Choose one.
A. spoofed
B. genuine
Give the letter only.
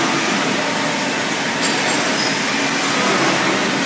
B